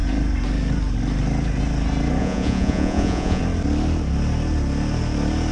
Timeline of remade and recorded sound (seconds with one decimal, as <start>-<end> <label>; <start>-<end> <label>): 0.0-2.2 recorded; 2.2-3.4 remade; 3.4-5.5 recorded

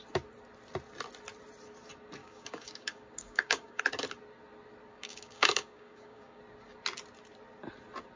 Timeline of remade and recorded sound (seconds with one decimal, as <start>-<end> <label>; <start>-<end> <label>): 0.0-2.2 recorded; 2.2-3.8 remade; 3.8-4.9 recorded; 4.9-6.4 remade; 6.4-8.2 recorded

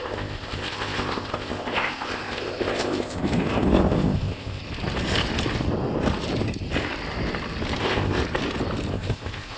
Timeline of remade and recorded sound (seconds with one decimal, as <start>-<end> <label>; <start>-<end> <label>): 0.0-4.6 remade; 4.6-7.8 recorded; 7.8-8.2 remade; 8.2-8.9 recorded; 8.9-9.6 remade